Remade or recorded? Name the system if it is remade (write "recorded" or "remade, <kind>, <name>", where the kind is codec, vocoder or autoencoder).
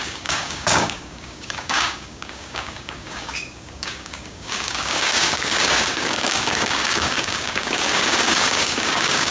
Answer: remade, codec, DAC